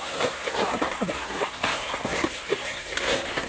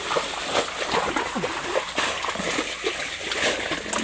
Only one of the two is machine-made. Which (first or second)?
first